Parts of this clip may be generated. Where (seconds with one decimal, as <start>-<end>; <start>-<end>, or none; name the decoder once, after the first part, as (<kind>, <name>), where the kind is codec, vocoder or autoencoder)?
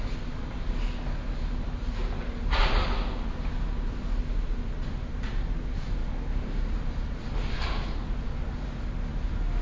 none